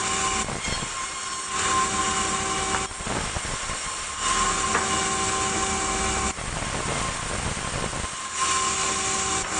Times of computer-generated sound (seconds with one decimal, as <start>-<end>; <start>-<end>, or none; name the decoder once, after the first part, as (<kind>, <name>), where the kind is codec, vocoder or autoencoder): none